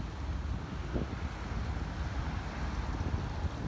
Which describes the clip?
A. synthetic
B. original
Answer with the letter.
B